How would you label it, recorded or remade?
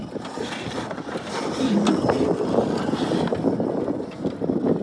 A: recorded